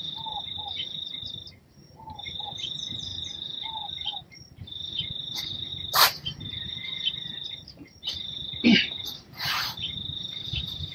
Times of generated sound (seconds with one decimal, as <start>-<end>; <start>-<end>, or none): 0.0-3.1; 3.6-10.9